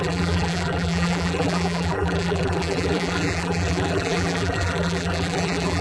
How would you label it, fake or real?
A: fake